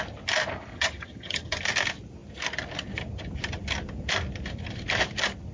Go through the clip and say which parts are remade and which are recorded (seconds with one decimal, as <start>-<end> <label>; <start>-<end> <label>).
0.0-0.7 recorded; 0.7-1.6 remade; 1.6-5.5 recorded